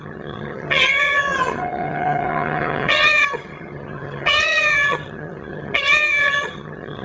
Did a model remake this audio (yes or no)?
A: yes